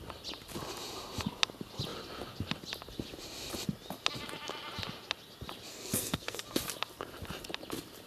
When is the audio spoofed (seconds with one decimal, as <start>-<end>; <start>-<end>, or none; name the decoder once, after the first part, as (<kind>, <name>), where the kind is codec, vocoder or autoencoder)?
5.7-6.4 (codec, SNAC)